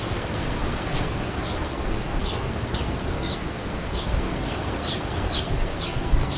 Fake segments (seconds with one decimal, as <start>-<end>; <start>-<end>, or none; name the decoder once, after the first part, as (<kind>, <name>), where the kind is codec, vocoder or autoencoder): 0.0-6.4 (codec, SNAC)